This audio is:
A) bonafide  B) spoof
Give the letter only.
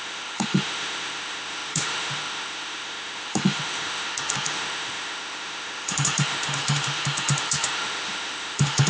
B